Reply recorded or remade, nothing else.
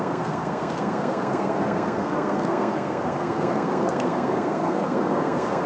remade